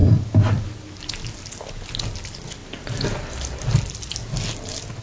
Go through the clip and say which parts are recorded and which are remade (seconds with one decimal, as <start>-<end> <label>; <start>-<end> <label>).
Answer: 0.0-5.0 recorded